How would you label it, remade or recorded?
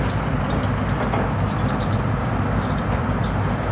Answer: recorded